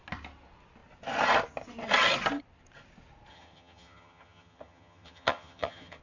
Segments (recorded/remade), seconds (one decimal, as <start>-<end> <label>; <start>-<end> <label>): 0.0-3.3 recorded; 3.3-6.0 remade